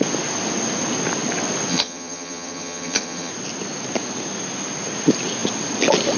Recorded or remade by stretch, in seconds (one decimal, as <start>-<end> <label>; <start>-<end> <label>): 0.0-1.7 recorded; 1.7-3.3 remade; 3.3-6.2 recorded